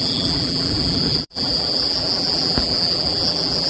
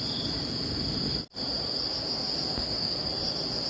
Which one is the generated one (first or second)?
first